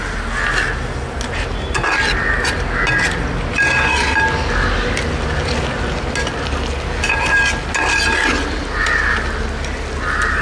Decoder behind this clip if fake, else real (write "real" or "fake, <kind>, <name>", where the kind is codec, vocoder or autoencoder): real